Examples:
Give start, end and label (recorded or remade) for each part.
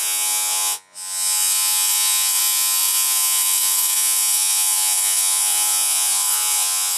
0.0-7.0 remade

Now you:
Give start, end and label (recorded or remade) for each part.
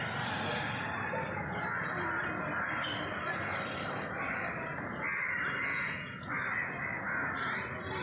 0.0-5.7 recorded; 5.7-6.3 remade; 6.3-8.0 recorded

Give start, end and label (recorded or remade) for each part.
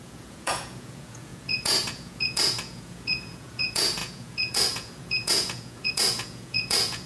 0.0-7.1 remade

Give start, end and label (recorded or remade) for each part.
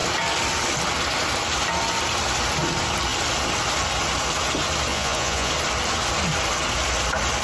0.0-4.9 recorded; 4.9-5.5 remade; 5.5-7.4 recorded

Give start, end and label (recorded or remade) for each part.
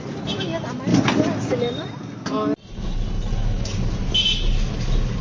0.0-5.2 recorded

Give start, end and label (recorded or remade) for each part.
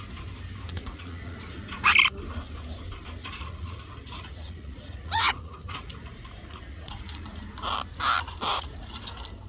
0.0-0.7 recorded; 0.7-1.9 remade; 1.9-3.2 recorded; 3.2-7.4 remade; 7.4-8.5 recorded; 8.5-9.0 remade; 9.0-9.5 recorded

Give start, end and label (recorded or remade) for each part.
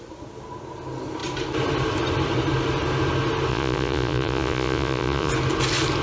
0.0-3.5 recorded; 3.5-5.3 remade; 5.3-6.0 recorded